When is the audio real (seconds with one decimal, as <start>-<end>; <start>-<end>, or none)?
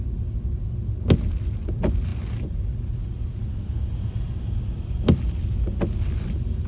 0.0-6.7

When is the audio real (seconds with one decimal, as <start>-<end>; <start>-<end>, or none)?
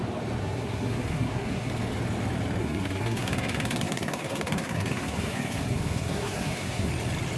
0.0-0.4; 1.7-2.6; 6.9-7.4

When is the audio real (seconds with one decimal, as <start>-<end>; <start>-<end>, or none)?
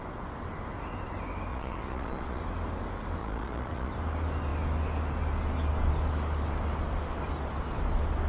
0.0-1.5; 2.4-3.2; 3.9-8.3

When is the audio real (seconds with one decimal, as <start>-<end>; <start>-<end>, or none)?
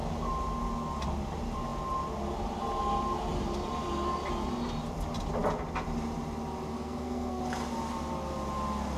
0.0-6.7; 7.4-9.0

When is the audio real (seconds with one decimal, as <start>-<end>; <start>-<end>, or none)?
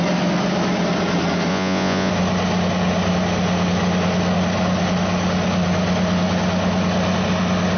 0.0-1.5; 2.1-7.8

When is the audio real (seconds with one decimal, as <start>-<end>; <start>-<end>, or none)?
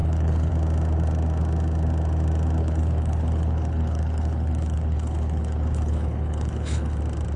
0.5-2.6; 7.0-7.4